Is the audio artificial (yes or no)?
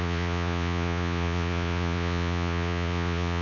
yes